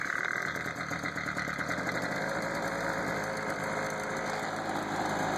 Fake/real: real